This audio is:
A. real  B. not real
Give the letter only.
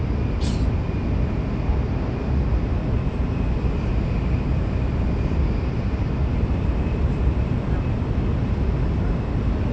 A